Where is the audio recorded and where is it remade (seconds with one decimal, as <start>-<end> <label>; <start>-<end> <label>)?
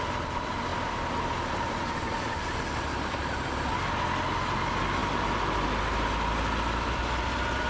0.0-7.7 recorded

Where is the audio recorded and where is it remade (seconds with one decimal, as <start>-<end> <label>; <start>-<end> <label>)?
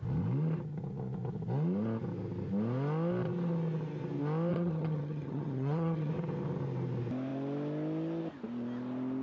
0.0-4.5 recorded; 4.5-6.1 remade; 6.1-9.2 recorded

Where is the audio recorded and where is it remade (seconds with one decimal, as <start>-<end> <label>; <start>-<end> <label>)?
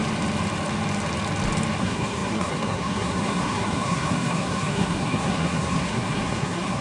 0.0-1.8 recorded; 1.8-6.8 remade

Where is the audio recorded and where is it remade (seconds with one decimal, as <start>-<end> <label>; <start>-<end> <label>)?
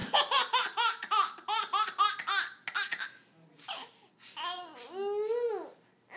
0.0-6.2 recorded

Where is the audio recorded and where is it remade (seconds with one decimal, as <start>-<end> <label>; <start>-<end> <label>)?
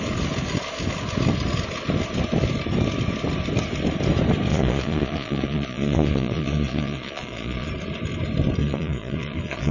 0.0-4.5 recorded; 4.5-7.7 remade; 7.7-8.6 recorded; 8.6-9.7 remade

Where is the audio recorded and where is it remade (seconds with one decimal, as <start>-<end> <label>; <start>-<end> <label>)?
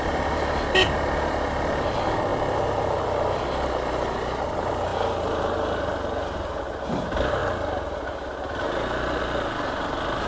0.0-10.3 recorded